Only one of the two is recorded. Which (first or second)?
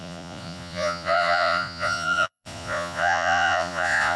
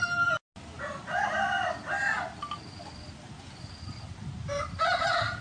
second